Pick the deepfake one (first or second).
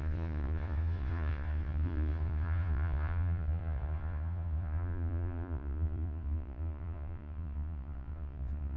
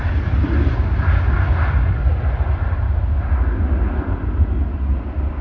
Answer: first